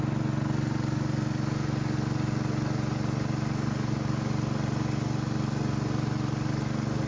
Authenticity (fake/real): real